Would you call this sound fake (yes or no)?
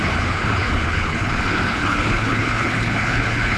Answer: yes